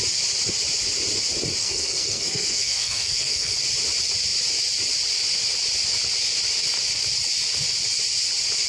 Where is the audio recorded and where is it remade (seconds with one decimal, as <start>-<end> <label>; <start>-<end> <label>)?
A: 0.0-1.6 recorded; 1.6-3.6 remade; 3.6-8.7 recorded